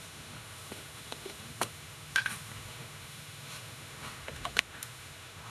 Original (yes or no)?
no